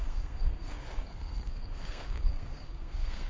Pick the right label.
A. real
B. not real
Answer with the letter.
B